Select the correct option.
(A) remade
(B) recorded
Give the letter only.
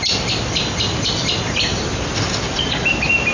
B